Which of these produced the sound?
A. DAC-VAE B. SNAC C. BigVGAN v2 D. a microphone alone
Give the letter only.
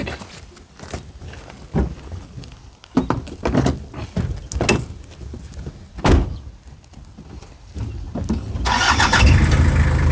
D